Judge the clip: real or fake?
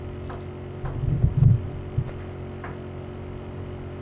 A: real